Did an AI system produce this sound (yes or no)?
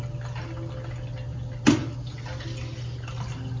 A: no